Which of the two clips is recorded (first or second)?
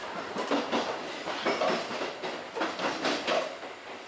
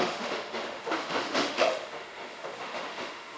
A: first